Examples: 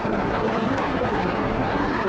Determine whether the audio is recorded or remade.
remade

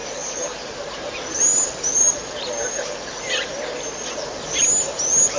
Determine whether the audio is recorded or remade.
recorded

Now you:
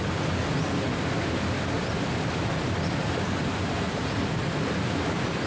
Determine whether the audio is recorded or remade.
recorded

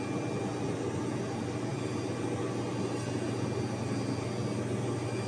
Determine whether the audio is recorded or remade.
recorded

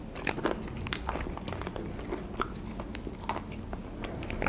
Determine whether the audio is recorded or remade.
recorded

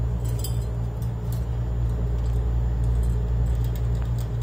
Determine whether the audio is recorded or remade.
recorded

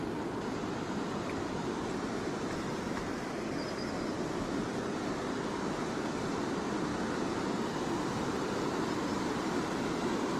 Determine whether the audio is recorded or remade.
recorded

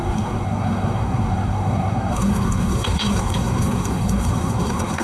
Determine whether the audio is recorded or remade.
remade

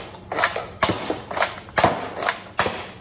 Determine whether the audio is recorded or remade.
recorded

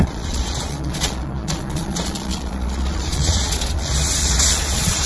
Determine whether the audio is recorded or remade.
remade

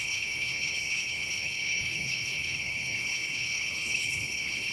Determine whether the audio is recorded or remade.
remade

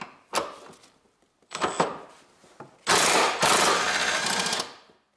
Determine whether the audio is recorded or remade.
recorded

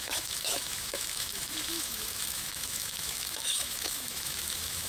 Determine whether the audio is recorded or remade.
remade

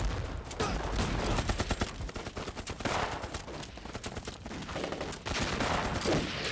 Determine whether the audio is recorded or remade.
recorded